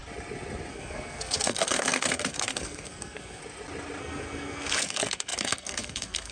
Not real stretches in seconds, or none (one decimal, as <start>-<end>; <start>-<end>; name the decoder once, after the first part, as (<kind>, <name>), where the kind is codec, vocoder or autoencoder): 0.7-3.4 (codec, SNAC); 4.0-6.3